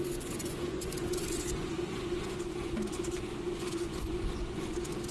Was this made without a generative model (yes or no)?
no